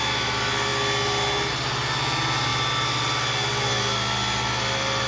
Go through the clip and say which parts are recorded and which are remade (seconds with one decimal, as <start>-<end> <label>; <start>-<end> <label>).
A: 0.0-5.1 recorded